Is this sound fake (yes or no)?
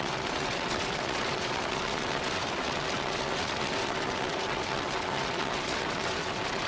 yes